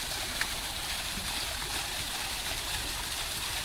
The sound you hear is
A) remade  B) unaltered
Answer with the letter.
A